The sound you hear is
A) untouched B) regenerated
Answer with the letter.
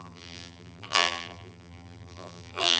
B